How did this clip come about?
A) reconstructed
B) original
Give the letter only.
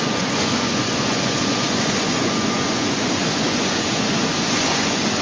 A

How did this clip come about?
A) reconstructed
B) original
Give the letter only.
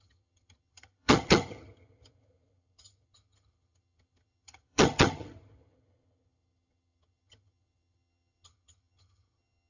A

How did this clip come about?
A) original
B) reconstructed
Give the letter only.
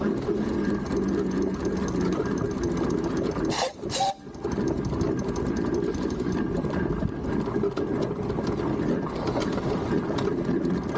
A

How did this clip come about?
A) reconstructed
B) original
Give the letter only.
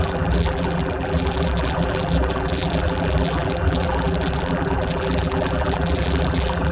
A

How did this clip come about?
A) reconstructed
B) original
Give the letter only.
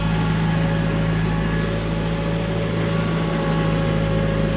B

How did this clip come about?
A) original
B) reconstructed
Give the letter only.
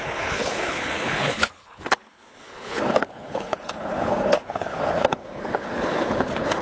B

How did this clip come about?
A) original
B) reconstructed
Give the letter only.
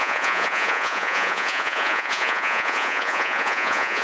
B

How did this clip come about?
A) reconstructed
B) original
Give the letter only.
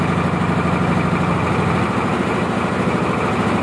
B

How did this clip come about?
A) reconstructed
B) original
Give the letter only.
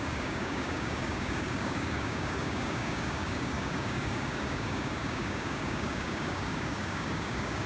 A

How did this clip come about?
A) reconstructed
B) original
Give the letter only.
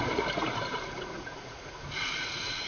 A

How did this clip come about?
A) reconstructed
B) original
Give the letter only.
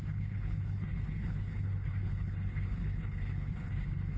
A